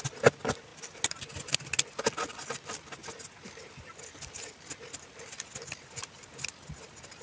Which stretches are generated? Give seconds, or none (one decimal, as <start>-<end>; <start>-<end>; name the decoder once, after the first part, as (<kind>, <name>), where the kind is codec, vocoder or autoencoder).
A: none